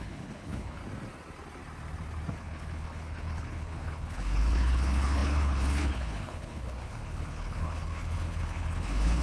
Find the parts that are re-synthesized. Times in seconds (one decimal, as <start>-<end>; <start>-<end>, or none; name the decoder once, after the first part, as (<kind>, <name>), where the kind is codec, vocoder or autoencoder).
0.0-0.8 (codec, HILCodec); 2.3-9.2